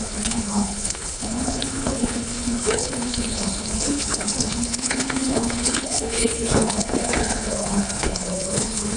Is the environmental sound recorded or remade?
remade